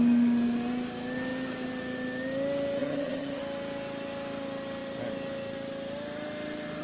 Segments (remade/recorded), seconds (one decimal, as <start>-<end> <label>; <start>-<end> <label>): 0.0-2.8 recorded; 2.8-3.4 remade; 3.4-6.8 recorded